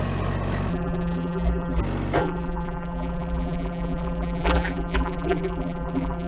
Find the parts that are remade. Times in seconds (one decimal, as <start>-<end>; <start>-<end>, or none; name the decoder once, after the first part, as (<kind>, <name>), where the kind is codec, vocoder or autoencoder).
0.7-1.8 (vocoder, BigVGAN v2); 2.2-6.3